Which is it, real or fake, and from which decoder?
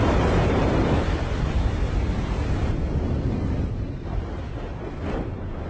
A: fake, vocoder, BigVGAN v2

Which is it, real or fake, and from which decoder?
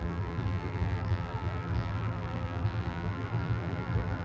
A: fake, vocoder, BigVGAN v2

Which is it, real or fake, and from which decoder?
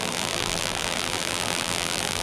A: fake, vocoder, BigVGAN v2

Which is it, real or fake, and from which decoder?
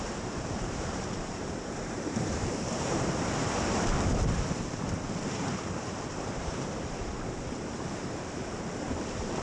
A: fake, vocoder, BigVGAN v2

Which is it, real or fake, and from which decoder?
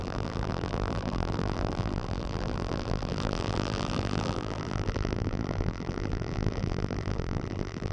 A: fake, vocoder, BigVGAN v2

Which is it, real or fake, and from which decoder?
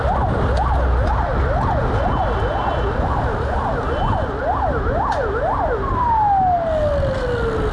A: real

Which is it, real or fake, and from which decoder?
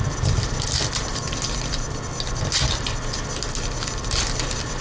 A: real